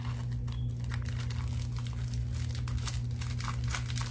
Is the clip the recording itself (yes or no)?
yes